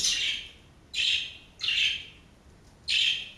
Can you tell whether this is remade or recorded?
recorded